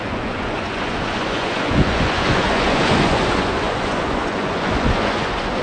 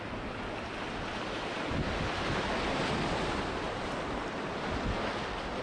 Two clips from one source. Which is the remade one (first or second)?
first